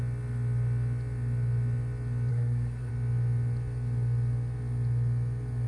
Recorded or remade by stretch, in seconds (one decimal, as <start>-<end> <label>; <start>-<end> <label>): 0.0-2.3 recorded; 2.3-2.9 remade; 2.9-5.7 recorded